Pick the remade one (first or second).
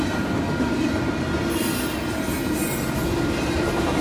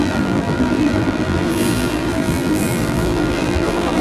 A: second